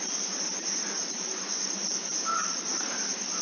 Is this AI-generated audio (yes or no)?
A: yes